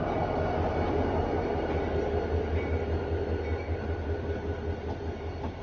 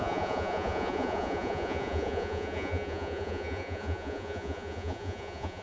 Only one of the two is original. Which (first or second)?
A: first